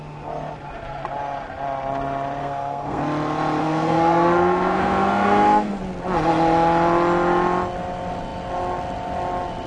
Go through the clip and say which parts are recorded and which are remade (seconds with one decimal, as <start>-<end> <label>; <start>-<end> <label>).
0.0-2.4 recorded; 2.4-3.0 remade; 3.0-3.6 recorded; 3.6-5.8 remade; 5.8-9.7 recorded